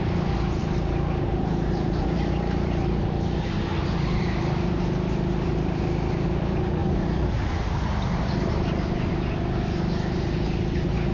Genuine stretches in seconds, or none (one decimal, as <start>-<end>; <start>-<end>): 0.0-0.6; 2.3-6.8; 8.5-11.1